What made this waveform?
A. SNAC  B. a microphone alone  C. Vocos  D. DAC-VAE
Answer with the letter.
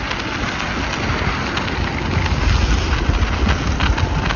B